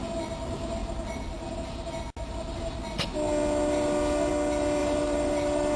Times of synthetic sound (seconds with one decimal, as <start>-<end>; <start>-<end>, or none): 4.8-5.8